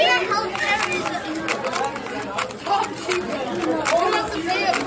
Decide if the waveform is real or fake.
real